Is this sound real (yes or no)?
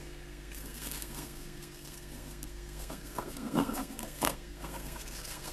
no